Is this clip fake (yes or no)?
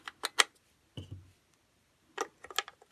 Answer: no